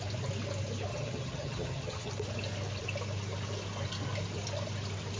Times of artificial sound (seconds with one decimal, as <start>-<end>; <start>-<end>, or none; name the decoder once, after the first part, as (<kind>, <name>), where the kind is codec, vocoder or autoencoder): 0.9-2.1 (vocoder, HiFi-GAN)